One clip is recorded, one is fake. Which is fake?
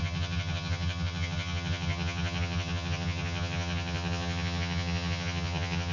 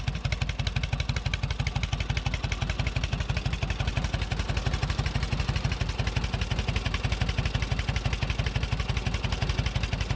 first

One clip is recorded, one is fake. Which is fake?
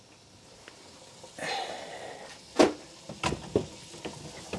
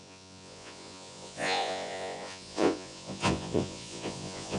second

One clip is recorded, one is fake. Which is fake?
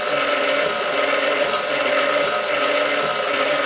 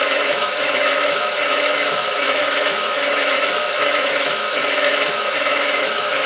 second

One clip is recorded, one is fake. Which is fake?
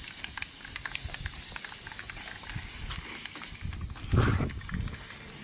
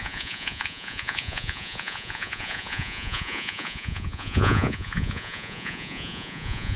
second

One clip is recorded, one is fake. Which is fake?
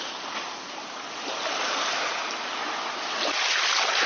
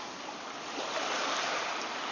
second